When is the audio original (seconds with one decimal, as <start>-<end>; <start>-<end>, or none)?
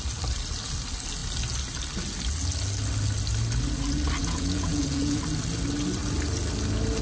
0.0-4.2; 5.2-7.0